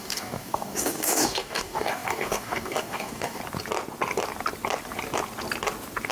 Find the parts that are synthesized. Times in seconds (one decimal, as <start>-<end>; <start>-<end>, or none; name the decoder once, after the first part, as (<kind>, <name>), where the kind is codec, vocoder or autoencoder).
0.0-3.4 (codec, DAC)